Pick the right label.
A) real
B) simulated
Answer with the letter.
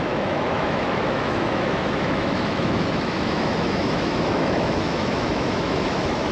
B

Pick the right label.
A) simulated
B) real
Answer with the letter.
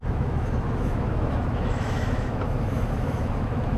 A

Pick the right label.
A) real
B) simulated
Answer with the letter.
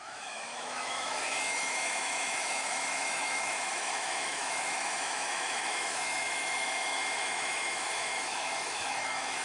B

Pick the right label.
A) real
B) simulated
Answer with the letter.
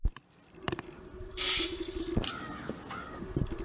A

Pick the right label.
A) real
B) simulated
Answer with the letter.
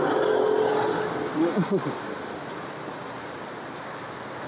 A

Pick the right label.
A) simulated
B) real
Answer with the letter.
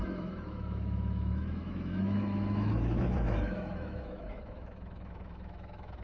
A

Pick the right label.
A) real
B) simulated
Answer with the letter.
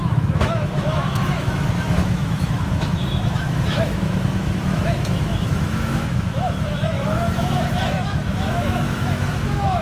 B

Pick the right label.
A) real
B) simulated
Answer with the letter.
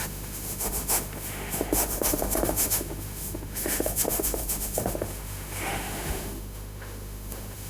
B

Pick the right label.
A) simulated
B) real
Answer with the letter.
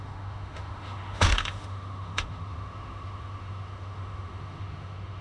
A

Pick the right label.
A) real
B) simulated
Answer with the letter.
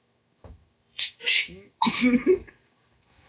B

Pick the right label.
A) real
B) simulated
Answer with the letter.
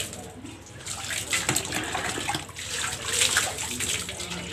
A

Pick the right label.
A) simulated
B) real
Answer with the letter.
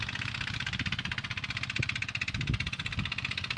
B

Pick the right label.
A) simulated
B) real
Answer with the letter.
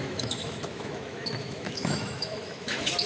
A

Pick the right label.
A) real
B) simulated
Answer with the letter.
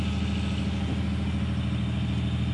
A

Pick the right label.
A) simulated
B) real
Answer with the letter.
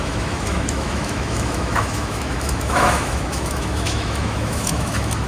A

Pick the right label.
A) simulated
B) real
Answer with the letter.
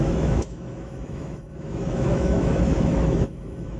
A